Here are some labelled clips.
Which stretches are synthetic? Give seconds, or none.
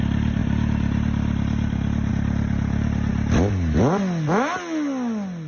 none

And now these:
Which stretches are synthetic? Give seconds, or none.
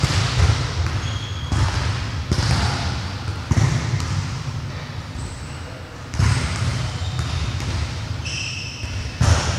none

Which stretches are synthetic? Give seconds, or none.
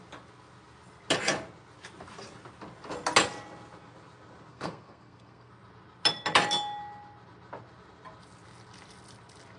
4.5-5.5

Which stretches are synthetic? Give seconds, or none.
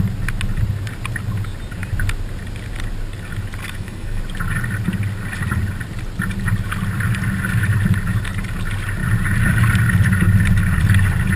3.6-4.2